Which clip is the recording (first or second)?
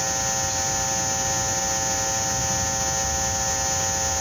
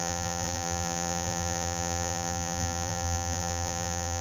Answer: first